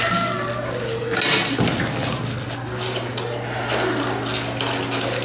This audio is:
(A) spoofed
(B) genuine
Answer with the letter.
B